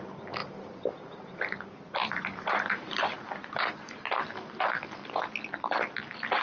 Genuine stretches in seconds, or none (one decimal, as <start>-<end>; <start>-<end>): 0.0-0.4; 4.2-6.4